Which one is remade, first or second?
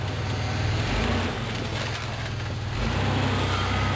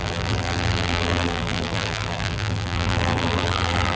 second